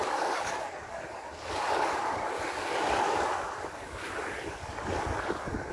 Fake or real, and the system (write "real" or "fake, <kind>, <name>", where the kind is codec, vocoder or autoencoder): fake, codec, DAC